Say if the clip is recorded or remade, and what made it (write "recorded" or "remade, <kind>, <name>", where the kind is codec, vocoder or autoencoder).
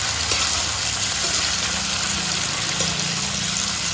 recorded